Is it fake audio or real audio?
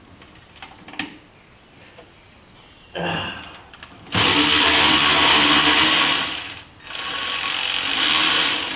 real